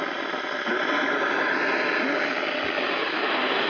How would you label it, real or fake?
real